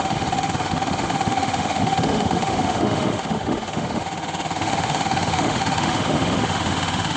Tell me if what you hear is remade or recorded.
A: remade